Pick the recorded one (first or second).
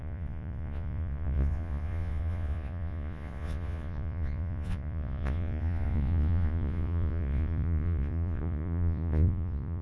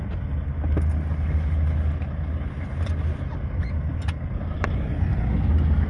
second